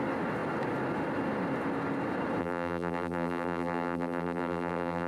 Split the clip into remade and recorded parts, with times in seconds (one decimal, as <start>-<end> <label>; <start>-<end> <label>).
0.0-2.4 recorded; 2.4-5.1 remade

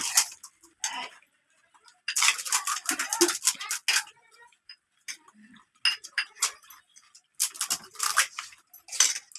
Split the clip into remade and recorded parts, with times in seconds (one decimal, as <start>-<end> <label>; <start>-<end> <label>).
0.0-5.9 recorded; 5.9-6.4 remade; 6.4-9.4 recorded

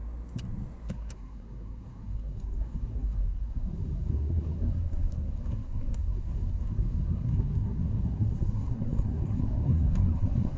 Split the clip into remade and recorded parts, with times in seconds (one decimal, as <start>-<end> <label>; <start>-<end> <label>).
0.0-0.9 recorded; 0.9-10.6 remade